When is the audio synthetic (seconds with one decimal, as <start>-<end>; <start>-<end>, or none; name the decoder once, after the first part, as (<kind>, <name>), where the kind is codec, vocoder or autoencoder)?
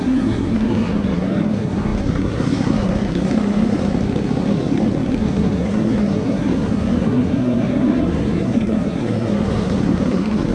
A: 0.0-10.5 (codec, SNAC)